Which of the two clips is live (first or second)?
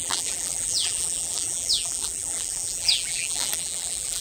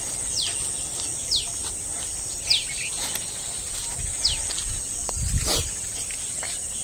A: second